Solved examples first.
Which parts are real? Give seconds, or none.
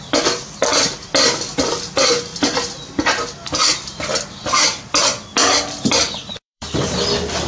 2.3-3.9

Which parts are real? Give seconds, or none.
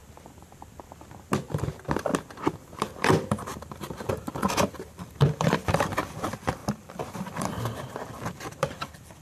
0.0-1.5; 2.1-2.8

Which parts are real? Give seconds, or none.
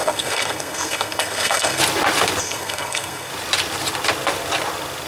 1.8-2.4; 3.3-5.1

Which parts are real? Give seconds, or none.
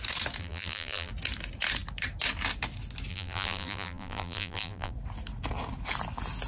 0.0-0.4; 1.1-3.1; 4.9-6.5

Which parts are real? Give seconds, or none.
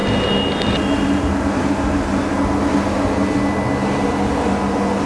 0.0-5.1